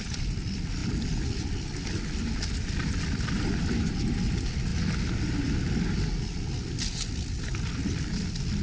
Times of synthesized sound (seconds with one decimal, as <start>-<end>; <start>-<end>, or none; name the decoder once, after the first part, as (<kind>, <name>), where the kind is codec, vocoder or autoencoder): 0.0-4.7 (vocoder, BigVGAN v2); 7.4-8.6